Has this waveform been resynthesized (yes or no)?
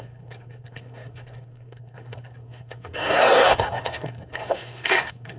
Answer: yes